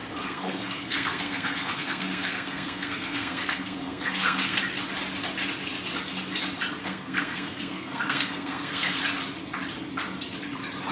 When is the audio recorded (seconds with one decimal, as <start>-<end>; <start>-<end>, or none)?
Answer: 4.6-6.8; 9.0-10.9